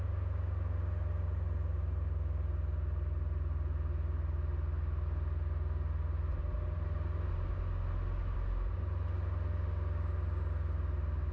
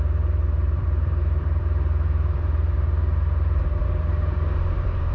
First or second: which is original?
first